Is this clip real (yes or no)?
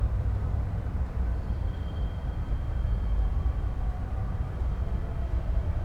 no